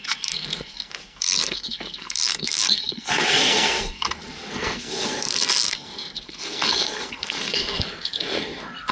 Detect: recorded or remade remade